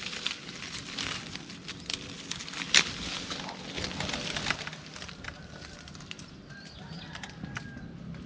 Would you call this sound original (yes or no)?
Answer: yes